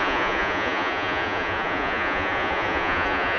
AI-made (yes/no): yes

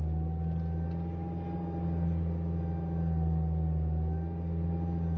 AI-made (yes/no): no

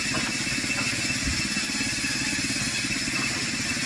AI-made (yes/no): no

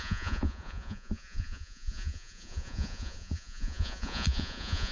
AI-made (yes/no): yes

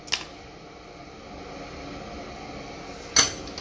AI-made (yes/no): no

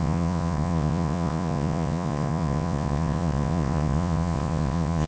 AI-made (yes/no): yes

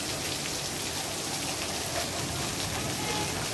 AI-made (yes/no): no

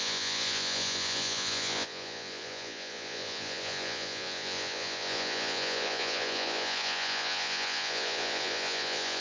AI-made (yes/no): yes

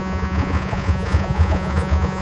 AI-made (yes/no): yes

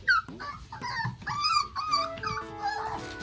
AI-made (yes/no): no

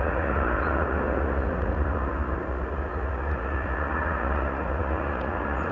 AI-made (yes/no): yes